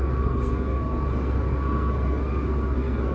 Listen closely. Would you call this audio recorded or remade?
remade